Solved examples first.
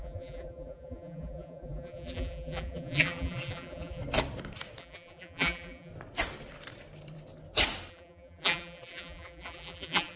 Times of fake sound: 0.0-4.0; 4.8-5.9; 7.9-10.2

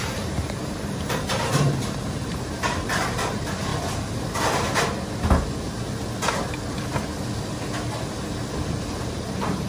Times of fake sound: 0.0-3.7; 8.9-9.7

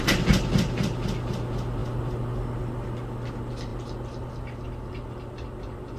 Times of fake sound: none

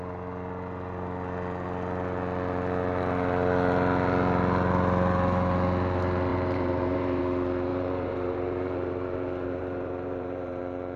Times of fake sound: 6.3-7.2; 7.7-10.6

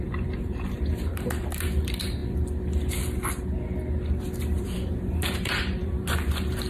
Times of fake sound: 0.0-2.2; 4.6-6.7